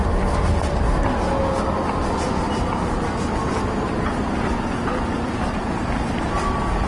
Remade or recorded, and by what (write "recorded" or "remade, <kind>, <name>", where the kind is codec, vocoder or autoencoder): recorded